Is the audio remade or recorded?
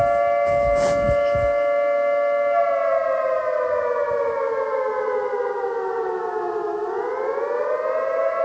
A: recorded